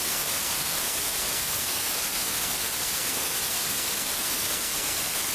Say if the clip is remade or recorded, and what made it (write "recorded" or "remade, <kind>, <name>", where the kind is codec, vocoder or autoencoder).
remade, codec, SNAC